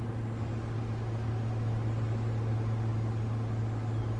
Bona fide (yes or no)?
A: yes